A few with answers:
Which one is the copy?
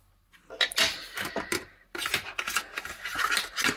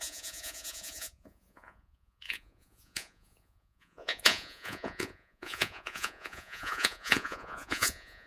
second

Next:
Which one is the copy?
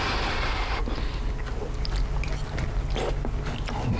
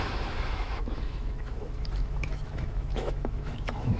second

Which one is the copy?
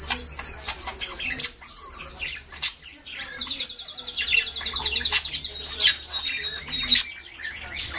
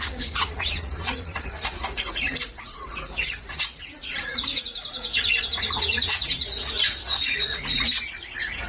second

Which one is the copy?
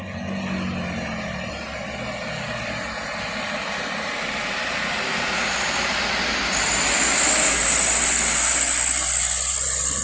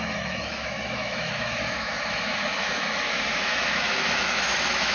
second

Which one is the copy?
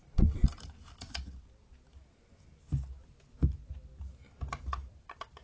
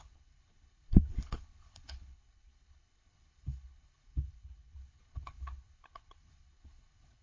second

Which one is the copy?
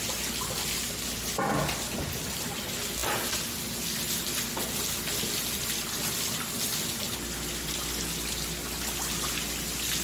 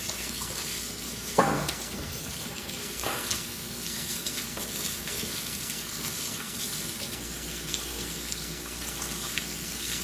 second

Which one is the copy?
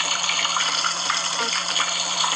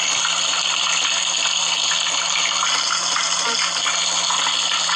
first